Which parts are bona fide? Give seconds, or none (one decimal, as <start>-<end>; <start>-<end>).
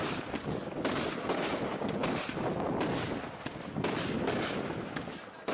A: 0.0-5.5